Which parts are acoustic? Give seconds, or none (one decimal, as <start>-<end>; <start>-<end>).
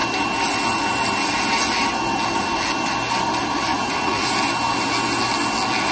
0.0-3.7; 4.3-5.9